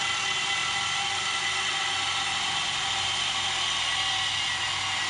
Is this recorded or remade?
recorded